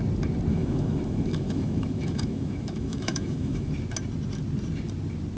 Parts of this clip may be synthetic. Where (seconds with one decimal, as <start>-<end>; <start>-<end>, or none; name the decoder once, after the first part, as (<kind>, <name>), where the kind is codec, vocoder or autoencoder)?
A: 0.5-3.7 (autoencoder, DAC-VAE)